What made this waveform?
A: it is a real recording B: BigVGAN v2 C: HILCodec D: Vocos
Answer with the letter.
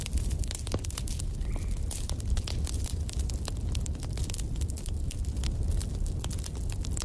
A